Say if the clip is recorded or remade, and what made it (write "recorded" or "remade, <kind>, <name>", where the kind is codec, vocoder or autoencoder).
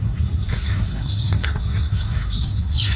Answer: remade, codec, SNAC